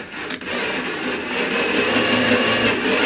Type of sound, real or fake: real